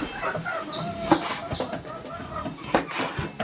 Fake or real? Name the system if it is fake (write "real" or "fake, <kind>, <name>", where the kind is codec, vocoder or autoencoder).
real